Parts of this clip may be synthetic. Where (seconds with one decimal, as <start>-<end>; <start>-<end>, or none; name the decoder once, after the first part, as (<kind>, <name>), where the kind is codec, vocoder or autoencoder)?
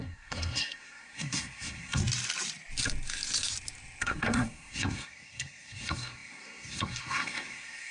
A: 0.0-2.0 (codec, SNAC); 4.0-7.9